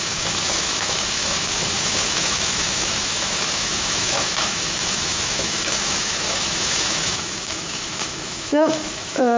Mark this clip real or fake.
fake